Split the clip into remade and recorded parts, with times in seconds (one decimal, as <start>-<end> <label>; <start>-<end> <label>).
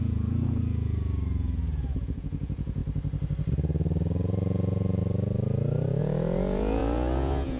0.0-2.8 remade; 2.8-3.5 recorded; 3.5-5.0 remade; 5.0-6.0 recorded; 6.0-7.6 remade